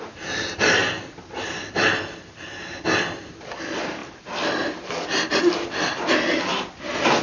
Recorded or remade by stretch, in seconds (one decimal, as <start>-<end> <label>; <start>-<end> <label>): 0.0-7.2 recorded